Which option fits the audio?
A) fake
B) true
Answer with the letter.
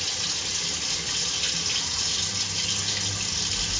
B